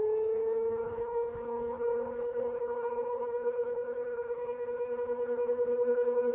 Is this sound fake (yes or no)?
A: yes